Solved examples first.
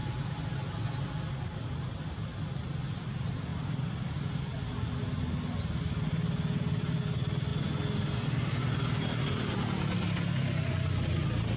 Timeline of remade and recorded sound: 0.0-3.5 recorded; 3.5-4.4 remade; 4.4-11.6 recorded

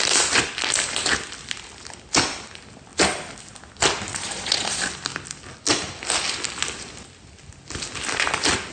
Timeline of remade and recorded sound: 0.0-4.1 recorded; 4.1-4.8 remade; 4.8-8.7 recorded

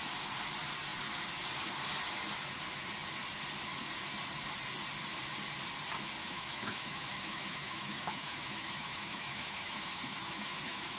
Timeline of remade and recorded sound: 0.0-6.2 recorded; 6.2-11.0 remade

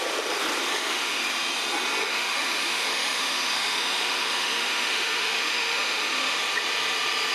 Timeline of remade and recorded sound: 0.0-0.7 recorded; 0.7-1.2 remade; 1.2-2.0 recorded; 2.0-6.4 remade; 6.4-7.3 recorded

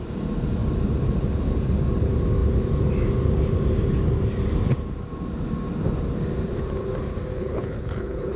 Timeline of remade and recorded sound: 0.0-7.3 recorded; 7.3-8.4 remade

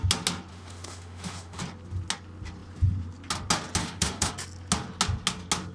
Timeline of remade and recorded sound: 0.0-0.5 recorded; 0.5-1.6 remade; 1.6-3.8 recorded; 3.8-4.3 remade; 4.3-5.7 recorded

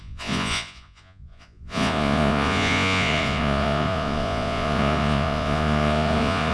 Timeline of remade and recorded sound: 0.0-6.5 remade